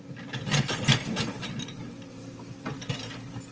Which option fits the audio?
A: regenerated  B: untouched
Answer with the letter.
B